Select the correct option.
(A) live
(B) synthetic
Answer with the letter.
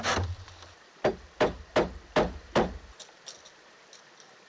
A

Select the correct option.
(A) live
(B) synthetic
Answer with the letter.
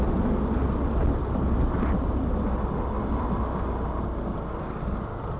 A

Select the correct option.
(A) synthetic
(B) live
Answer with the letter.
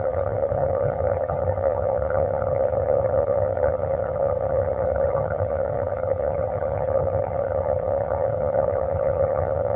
A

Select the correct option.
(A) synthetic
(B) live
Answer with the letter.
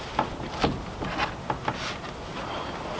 B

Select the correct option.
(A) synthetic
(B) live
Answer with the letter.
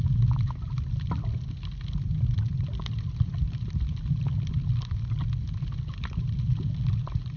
B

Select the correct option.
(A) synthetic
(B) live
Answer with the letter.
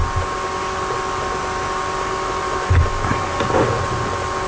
B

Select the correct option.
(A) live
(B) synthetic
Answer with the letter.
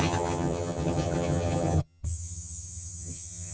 B